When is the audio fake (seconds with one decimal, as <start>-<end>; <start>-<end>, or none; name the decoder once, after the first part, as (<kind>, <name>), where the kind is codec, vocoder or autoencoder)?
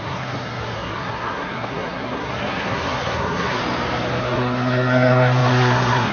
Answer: 0.0-3.6 (codec, SNAC); 4.2-6.1